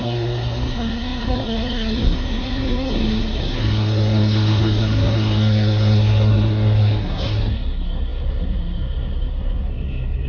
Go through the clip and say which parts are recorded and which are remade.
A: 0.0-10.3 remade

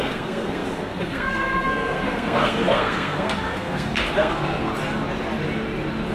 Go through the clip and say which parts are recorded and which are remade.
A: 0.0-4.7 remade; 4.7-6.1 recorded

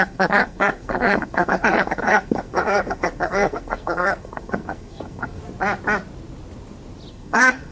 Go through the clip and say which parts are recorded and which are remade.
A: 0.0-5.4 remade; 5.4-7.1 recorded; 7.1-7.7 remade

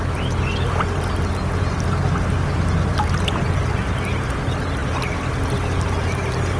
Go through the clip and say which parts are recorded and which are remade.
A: 0.0-6.6 recorded

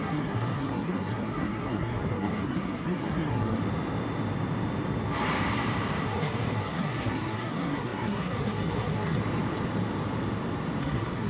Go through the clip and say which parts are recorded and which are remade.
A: 0.0-3.6 remade; 3.6-6.0 recorded; 6.0-9.2 remade; 9.2-10.8 recorded; 10.8-11.3 remade

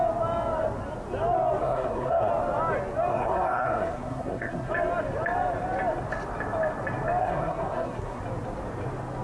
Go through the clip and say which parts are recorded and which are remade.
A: 0.0-1.6 recorded; 1.6-2.3 remade; 2.3-3.1 recorded; 3.1-4.7 remade; 4.7-7.2 recorded; 7.2-8.2 remade; 8.2-9.2 recorded